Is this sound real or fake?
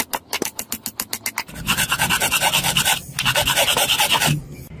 real